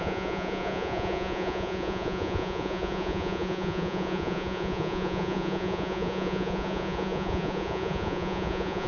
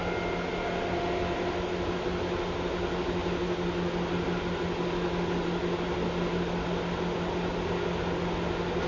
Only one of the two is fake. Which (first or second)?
first